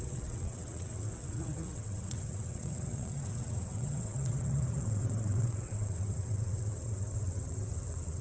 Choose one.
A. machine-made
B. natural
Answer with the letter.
A